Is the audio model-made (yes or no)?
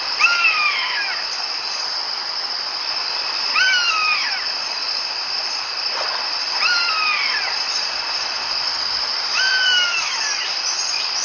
yes